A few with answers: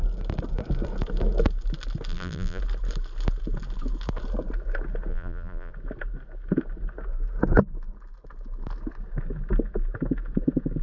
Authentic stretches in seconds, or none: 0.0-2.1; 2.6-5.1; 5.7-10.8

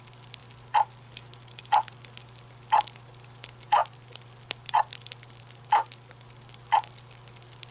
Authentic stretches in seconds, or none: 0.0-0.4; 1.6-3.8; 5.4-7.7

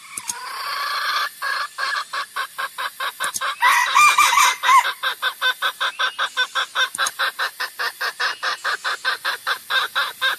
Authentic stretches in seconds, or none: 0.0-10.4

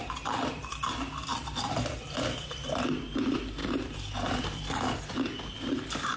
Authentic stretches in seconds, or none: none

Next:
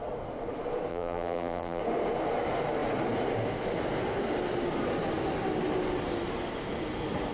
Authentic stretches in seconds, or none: 0.0-0.9; 1.8-7.3

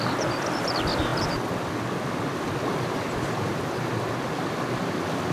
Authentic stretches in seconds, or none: 0.0-2.7; 3.9-5.3